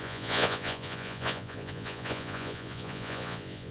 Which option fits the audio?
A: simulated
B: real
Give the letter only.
A